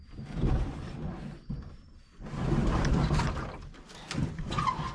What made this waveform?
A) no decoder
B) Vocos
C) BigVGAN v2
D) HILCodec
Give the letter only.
A